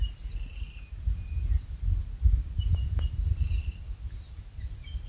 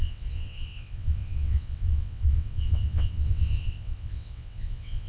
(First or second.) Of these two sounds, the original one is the first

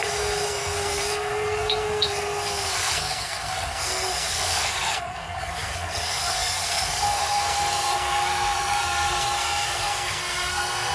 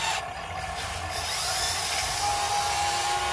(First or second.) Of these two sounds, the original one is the second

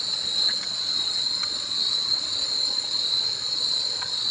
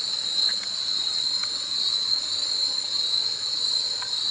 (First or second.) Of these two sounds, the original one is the second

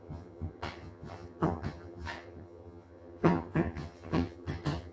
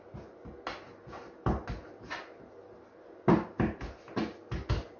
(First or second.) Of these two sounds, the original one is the second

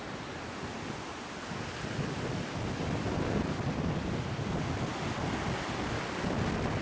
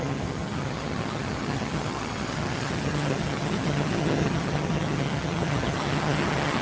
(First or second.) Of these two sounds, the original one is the first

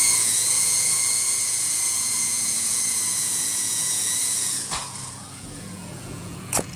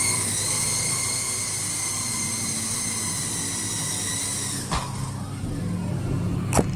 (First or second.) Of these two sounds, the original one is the second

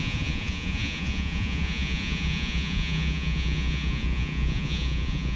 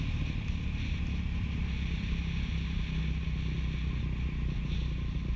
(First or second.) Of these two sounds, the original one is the second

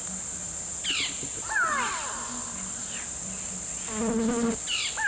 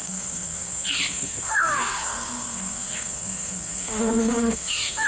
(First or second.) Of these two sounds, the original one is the first